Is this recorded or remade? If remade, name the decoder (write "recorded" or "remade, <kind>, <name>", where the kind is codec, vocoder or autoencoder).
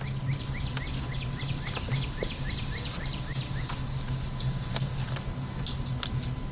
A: recorded